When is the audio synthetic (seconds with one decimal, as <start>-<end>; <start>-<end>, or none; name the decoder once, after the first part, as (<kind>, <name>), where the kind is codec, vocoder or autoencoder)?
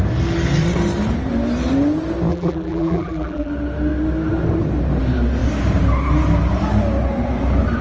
2.3-3.5 (vocoder, BigVGAN v2)